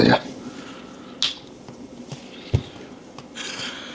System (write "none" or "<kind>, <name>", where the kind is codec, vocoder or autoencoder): none